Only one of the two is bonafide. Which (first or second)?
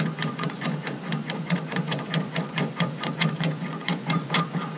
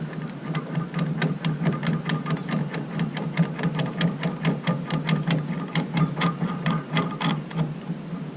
second